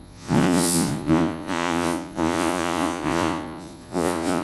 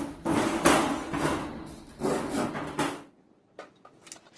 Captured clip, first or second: second